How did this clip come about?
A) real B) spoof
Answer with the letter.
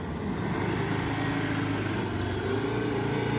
A